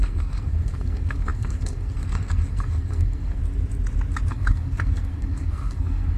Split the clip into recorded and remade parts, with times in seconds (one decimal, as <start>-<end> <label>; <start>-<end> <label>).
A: 0.0-3.4 remade; 3.4-4.3 recorded; 4.3-6.2 remade